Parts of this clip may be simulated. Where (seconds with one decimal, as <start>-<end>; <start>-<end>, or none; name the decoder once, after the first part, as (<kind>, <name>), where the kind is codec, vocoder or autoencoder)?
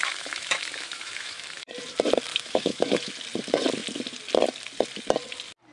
0.0-1.7 (autoencoder, DAC-VAE); 2.3-3.1